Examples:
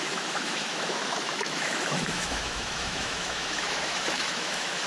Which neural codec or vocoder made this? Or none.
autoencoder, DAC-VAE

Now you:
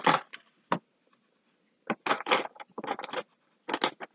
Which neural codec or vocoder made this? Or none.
none